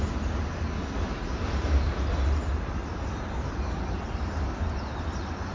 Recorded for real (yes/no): yes